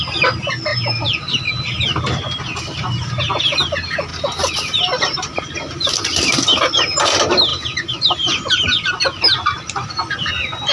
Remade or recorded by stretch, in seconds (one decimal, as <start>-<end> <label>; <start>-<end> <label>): 0.0-4.1 recorded; 4.1-5.3 remade; 5.3-7.5 recorded; 7.5-9.0 remade; 9.0-10.7 recorded